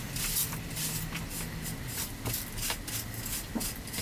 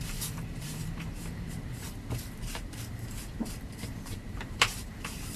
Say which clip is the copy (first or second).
second